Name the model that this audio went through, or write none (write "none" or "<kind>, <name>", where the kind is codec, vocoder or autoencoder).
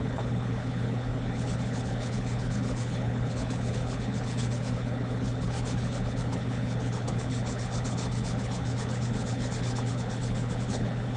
codec, HILCodec